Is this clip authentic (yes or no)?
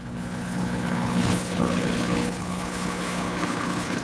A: no